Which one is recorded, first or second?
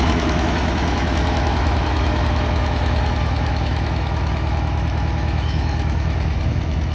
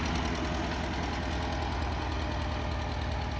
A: second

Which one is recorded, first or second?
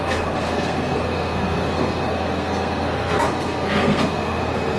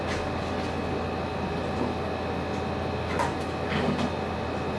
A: second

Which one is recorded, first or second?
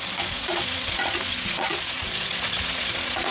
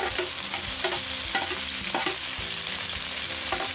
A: second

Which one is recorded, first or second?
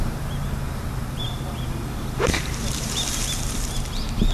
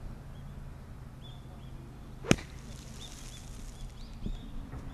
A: second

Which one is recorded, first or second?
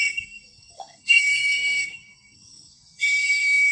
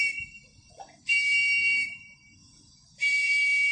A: second